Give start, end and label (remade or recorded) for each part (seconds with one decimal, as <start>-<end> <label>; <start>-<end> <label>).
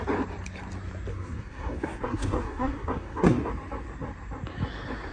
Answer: 0.0-1.1 recorded; 1.1-3.5 remade; 3.5-5.1 recorded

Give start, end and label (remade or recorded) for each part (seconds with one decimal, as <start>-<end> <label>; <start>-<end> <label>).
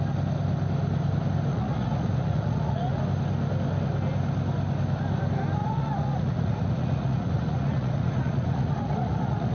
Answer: 0.0-1.5 recorded; 1.5-3.0 remade; 3.0-5.6 recorded; 5.6-9.5 remade